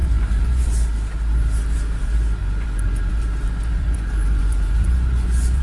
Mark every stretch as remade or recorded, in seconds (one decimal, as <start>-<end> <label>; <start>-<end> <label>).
0.0-0.7 remade; 0.7-2.4 recorded; 2.4-3.1 remade; 3.1-3.7 recorded; 3.7-5.6 remade